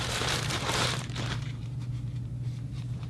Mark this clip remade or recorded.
remade